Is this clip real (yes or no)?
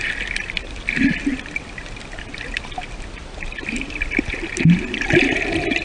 yes